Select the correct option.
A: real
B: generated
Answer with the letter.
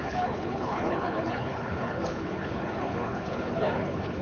B